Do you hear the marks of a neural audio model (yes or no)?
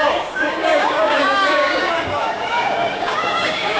yes